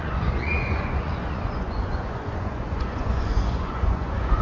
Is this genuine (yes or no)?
no